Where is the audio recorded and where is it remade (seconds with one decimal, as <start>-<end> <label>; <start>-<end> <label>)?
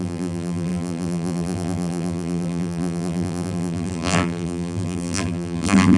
0.0-6.0 remade